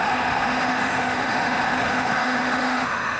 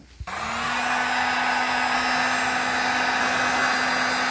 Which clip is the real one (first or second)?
second